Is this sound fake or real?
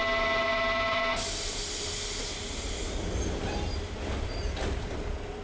real